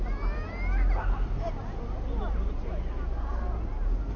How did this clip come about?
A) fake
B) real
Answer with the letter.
B